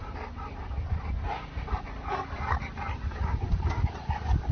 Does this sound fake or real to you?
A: real